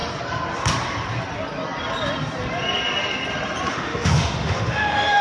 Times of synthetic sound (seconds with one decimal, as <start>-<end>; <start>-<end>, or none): 3.7-5.2